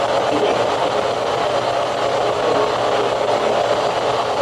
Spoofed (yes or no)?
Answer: no